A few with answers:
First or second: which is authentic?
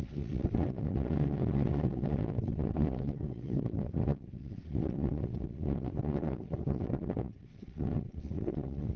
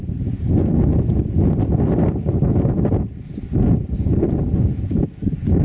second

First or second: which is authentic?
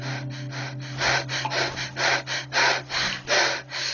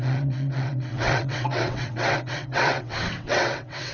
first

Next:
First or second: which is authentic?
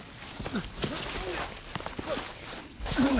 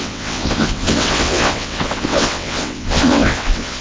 first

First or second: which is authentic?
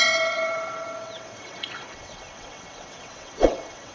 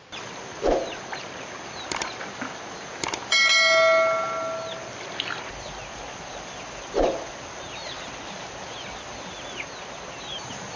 second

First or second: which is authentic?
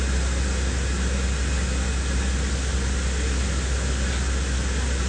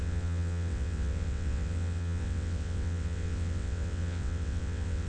first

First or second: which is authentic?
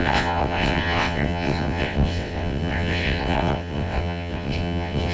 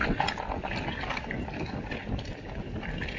second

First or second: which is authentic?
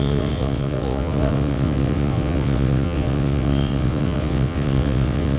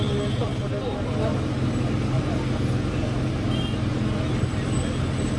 second